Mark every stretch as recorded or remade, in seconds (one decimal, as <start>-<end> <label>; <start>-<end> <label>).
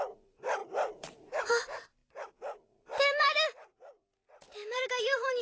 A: 0.0-2.0 remade; 2.0-4.4 recorded; 4.4-5.4 remade